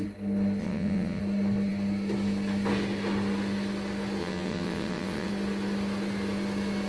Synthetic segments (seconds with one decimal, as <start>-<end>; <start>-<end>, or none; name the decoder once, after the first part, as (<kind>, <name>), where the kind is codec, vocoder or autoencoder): 0.6-1.2 (vocoder, WaveNeXt); 4.2-5.3

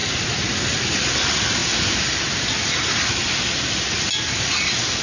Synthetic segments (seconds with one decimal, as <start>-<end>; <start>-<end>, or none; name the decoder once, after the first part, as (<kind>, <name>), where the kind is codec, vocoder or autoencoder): none

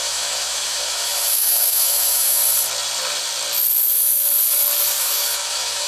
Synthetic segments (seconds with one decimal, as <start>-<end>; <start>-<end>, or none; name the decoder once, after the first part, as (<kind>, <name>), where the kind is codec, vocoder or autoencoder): 0.0-2.4 (autoencoder, DAC-VAE); 5.0-5.9